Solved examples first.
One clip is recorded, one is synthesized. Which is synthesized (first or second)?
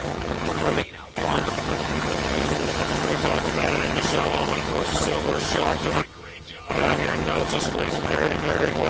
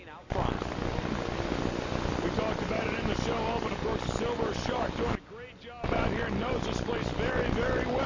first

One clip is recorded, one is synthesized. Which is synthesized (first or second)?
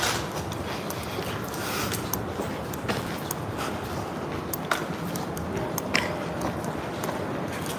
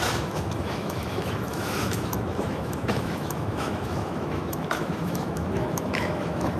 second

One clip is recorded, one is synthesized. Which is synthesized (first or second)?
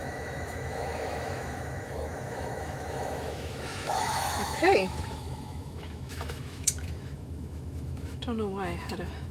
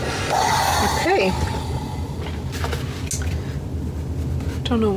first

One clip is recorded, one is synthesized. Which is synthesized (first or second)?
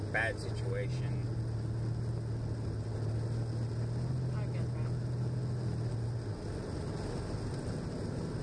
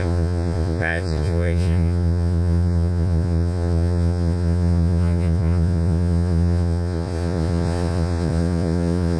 second